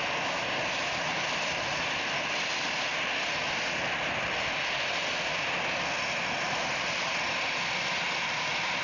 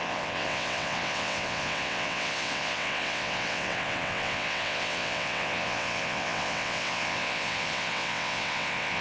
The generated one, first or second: second